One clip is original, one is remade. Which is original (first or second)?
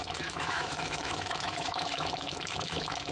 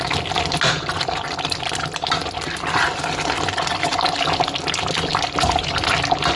second